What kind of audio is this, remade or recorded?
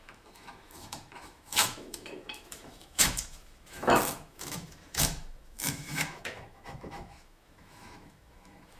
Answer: remade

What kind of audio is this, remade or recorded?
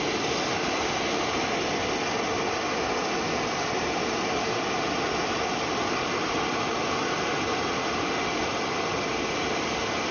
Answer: recorded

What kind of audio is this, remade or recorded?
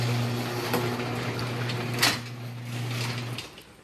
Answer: recorded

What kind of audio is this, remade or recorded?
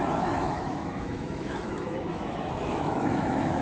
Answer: remade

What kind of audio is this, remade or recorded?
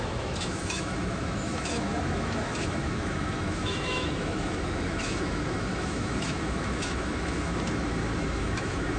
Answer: remade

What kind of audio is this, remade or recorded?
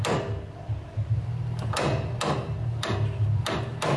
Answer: recorded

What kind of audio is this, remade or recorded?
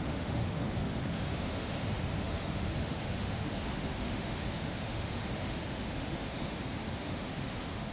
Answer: remade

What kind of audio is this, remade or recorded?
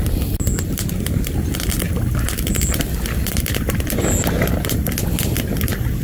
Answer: recorded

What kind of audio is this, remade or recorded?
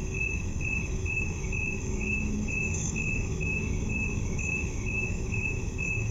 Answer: remade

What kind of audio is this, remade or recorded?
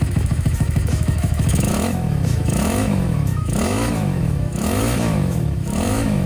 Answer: remade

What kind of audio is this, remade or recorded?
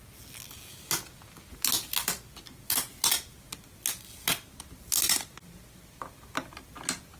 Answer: recorded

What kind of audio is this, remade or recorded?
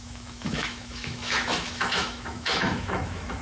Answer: remade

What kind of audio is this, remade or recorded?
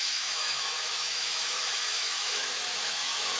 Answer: remade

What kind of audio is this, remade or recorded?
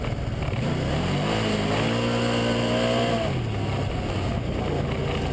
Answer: recorded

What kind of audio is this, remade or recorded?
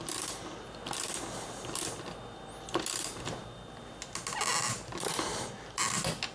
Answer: recorded